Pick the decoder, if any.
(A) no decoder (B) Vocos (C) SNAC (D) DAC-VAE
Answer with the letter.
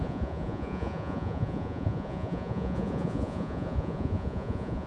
B